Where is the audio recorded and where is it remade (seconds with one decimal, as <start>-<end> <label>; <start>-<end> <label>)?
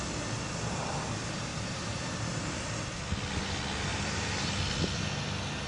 0.0-1.5 recorded; 1.5-2.6 remade; 2.6-3.9 recorded; 3.9-4.5 remade; 4.5-5.7 recorded